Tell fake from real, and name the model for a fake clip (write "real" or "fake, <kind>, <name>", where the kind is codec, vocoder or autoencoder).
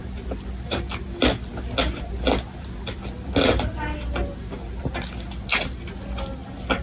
real